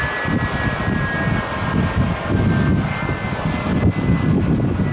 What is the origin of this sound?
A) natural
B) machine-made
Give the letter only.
A